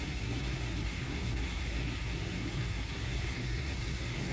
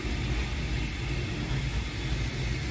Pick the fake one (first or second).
first